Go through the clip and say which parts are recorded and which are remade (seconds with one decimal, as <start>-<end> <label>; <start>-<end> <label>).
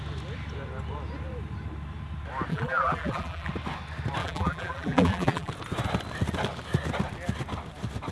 0.0-2.5 recorded; 2.5-3.5 remade; 3.5-4.2 recorded; 4.2-5.5 remade; 5.5-8.1 recorded